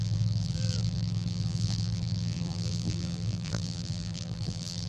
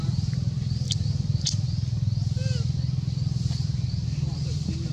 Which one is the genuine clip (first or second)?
second